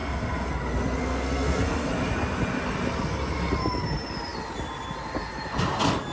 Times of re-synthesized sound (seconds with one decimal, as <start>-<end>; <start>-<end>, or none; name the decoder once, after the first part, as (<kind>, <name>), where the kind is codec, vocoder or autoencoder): 0.0-0.5 (codec, SNAC); 1.0-1.9